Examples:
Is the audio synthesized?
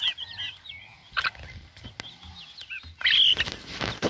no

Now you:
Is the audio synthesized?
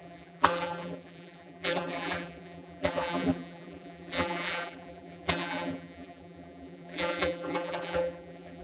yes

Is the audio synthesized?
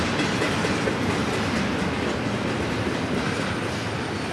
no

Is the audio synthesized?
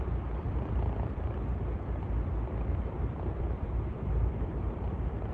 yes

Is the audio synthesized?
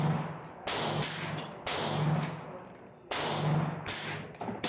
no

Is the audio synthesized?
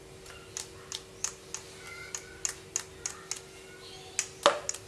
no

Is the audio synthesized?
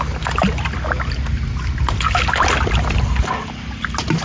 no